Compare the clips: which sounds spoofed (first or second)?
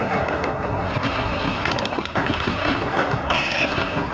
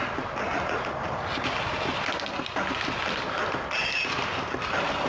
first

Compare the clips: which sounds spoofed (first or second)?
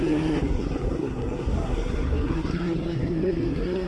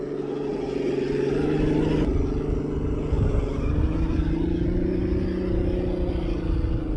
first